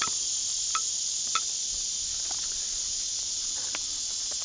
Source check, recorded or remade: recorded